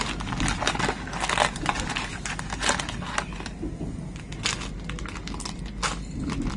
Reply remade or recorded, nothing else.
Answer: recorded